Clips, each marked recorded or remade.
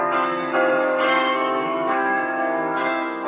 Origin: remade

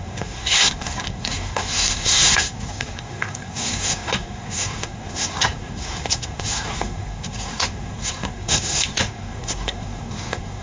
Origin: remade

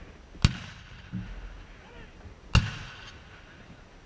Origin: recorded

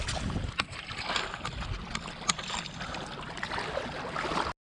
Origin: recorded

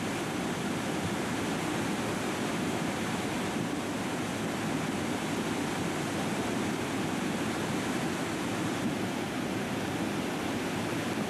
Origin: recorded